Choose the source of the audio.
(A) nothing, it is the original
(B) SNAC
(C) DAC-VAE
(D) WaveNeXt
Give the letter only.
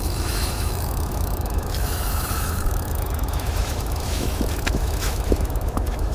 C